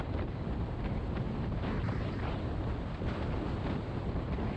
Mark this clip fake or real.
real